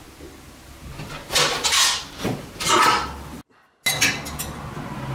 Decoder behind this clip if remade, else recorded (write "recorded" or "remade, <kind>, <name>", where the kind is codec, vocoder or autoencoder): recorded